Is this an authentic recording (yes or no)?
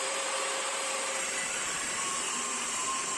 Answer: no